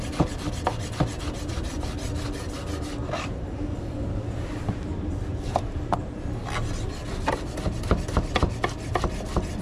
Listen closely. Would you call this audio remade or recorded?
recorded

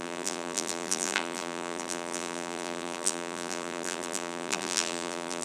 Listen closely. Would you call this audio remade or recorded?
remade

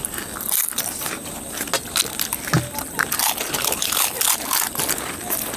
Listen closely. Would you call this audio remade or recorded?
recorded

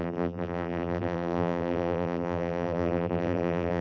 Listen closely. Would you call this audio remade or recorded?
remade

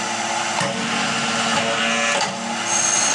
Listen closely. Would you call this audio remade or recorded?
recorded